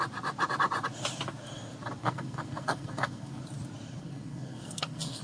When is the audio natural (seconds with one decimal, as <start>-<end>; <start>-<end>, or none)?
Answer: 0.0-2.0; 3.4-4.0